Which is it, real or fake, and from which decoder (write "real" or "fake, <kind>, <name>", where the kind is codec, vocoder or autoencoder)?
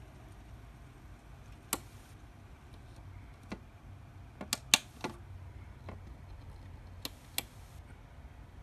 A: real